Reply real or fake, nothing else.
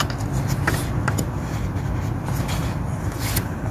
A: real